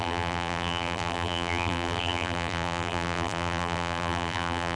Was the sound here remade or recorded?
remade